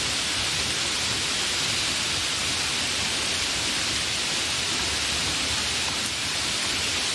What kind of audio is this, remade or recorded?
recorded